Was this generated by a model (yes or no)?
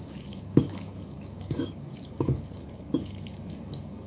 yes